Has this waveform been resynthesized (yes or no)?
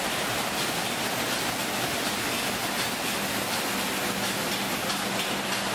no